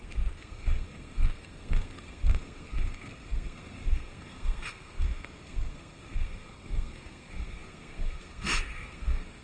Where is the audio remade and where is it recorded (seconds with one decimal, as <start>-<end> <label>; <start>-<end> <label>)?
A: 0.0-9.4 remade